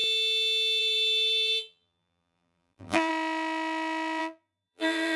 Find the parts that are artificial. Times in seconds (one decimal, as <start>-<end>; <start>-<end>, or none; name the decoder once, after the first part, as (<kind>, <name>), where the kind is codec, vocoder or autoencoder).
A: 0.8-3.1 (vocoder, BigVGAN v2); 4.2-5.2